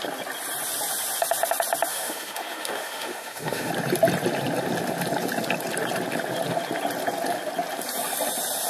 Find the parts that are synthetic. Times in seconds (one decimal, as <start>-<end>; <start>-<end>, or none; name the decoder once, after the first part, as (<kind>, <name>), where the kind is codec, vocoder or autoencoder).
1.9-3.7 (autoencoder, DAC-VAE)

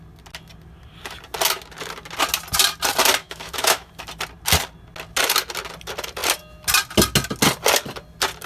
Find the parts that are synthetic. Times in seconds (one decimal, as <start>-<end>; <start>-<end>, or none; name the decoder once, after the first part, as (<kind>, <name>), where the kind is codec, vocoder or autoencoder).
3.2-3.9 (autoencoder, DAC-VAE)

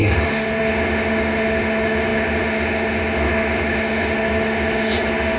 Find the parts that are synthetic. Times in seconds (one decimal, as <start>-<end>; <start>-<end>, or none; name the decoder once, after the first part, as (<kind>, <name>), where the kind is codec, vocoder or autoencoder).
0.0-5.4 (autoencoder, DAC-VAE)

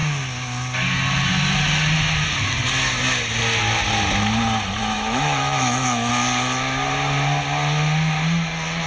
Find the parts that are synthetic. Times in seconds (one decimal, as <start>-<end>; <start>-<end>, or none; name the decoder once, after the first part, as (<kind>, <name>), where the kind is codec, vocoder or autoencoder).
4.8-6.1 (autoencoder, DAC-VAE)

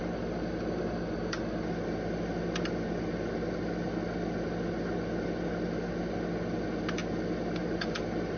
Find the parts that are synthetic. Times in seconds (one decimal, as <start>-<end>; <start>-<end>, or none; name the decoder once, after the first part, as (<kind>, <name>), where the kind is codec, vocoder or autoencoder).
none

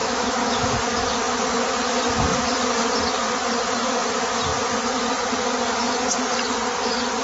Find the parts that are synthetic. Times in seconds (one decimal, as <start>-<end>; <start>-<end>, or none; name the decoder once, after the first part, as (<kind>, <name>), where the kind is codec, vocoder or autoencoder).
0.0-0.7 (autoencoder, DAC-VAE)